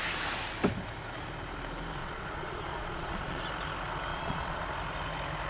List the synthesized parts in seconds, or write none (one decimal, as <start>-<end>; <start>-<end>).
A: 2.0-3.4; 4.1-4.6